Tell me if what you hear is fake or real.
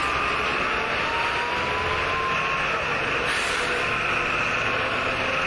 real